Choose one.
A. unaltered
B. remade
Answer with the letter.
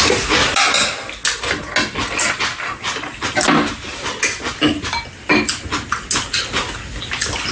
A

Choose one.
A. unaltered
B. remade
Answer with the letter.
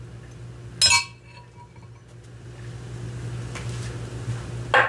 A